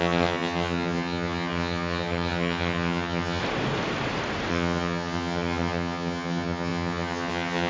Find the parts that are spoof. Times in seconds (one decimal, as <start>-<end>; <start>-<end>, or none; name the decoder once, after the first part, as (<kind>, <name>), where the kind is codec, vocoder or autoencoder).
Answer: 0.0-3.4 (vocoder, HiFi-GAN); 4.5-7.7